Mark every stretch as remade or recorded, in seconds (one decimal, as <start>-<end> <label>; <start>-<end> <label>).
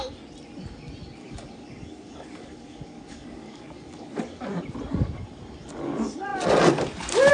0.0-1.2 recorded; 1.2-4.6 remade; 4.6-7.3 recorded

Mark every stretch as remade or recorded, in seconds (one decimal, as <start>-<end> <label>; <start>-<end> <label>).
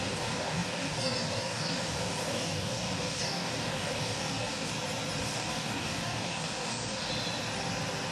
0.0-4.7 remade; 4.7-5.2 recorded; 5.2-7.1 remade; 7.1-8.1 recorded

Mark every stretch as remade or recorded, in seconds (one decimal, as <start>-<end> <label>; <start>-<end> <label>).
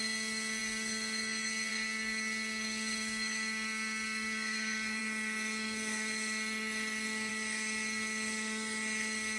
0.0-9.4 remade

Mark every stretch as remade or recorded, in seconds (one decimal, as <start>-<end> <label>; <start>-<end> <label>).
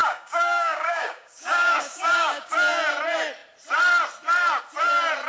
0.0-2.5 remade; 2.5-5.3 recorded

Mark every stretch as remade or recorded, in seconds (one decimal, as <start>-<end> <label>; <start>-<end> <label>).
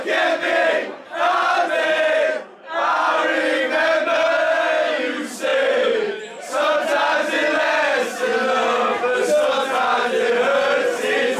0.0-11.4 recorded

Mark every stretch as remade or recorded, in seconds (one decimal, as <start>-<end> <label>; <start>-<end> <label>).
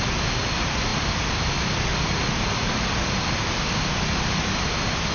0.0-5.1 recorded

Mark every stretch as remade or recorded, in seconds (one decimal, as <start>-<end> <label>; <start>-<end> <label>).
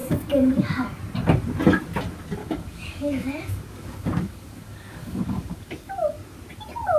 0.0-1.0 remade; 1.0-2.4 recorded; 2.4-5.9 remade; 5.9-7.0 recorded